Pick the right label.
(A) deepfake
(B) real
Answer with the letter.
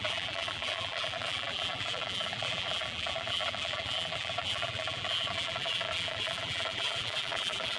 A